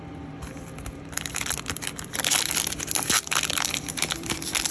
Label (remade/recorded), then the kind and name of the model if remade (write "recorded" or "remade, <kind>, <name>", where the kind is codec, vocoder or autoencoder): remade, vocoder, BigVGAN v2